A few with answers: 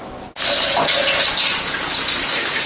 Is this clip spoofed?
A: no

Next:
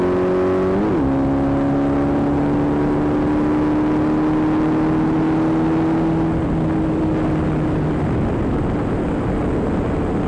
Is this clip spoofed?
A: no